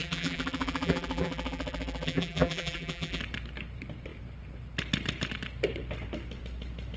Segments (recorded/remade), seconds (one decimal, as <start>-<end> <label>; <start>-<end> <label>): 0.0-3.2 remade; 3.2-7.0 recorded